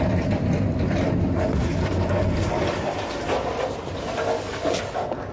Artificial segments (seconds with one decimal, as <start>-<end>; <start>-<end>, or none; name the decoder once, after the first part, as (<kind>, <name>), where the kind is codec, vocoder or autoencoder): 0.0-1.6 (vocoder, BigVGAN v2); 3.2-5.3